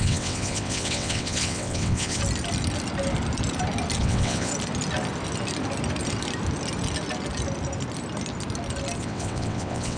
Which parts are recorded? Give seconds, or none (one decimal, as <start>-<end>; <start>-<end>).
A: 2.2-4.0; 4.5-9.0